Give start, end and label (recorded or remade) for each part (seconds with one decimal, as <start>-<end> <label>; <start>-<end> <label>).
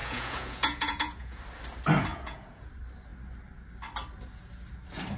0.0-1.4 remade; 1.4-2.1 recorded; 2.1-2.7 remade; 2.7-5.2 recorded